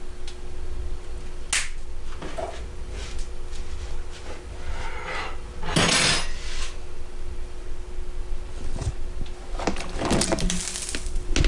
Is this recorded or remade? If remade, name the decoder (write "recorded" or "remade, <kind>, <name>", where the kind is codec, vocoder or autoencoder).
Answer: recorded